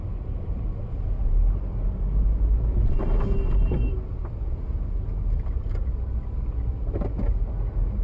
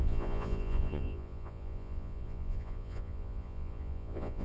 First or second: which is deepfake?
second